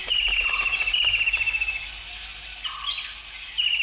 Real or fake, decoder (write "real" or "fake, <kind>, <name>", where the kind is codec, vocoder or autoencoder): real